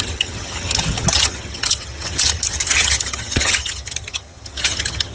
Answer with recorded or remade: remade